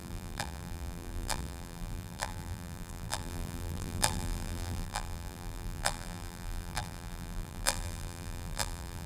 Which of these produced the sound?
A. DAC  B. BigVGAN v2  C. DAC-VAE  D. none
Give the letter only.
B